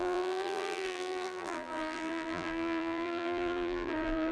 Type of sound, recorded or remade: remade